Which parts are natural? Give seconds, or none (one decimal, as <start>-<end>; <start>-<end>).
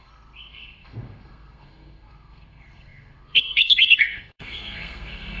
none